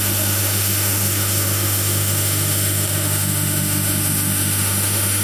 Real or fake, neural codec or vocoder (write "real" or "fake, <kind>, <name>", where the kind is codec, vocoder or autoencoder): fake, autoencoder, DAC-VAE